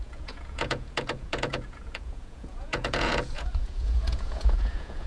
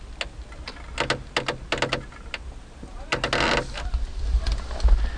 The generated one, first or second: first